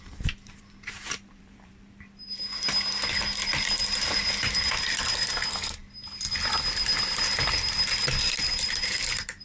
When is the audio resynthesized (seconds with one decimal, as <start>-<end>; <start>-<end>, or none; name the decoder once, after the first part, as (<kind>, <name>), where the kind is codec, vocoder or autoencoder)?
0.0-5.8 (vocoder, BigVGAN v2); 6.3-9.4

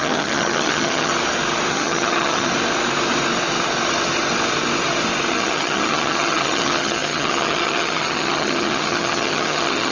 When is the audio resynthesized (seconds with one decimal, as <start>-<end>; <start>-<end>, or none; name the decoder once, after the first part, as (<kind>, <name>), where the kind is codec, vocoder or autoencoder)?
0.0-1.1 (vocoder, HiFi-GAN); 1.7-2.5; 5.3-9.9

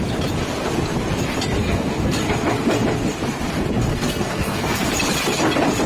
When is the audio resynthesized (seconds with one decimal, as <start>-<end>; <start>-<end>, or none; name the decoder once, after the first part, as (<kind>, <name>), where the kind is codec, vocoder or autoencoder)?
1.6-2.2 (codec, SNAC); 3.9-4.9

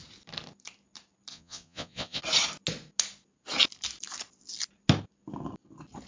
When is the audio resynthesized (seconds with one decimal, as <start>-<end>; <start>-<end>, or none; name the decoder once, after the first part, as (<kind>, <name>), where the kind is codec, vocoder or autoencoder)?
1.3-2.2 (vocoder, Vocos)